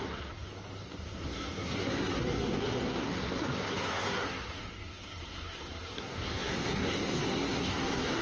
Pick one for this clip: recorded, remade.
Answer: remade